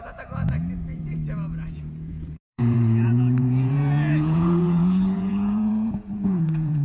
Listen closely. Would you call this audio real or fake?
fake